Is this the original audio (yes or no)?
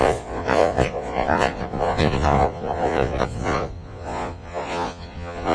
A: no